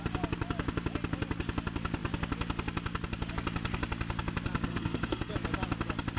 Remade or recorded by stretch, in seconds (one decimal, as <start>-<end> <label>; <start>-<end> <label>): 0.0-4.7 recorded; 4.7-5.3 remade; 5.3-6.2 recorded